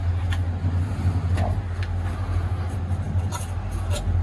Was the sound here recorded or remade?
recorded